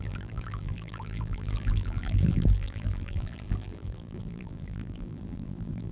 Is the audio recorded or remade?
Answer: remade